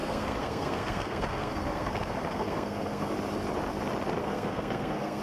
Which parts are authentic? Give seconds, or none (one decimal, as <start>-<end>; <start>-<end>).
3.1-4.2